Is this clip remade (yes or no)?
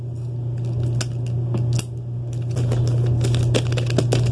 no